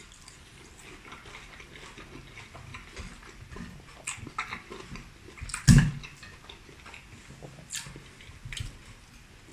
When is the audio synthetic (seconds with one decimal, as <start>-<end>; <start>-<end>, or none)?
none